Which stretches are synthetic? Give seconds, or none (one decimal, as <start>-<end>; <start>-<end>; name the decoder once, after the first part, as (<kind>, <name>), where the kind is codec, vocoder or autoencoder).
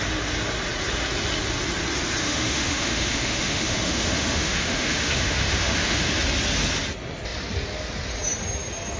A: 2.2-6.1 (autoencoder, DAC-VAE)